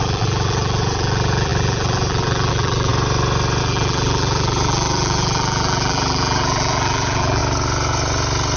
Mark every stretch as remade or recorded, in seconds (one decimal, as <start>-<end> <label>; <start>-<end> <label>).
0.0-2.9 remade; 2.9-3.6 recorded; 3.6-7.4 remade; 7.4-8.6 recorded